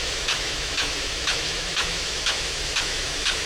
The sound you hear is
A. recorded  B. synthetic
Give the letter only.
B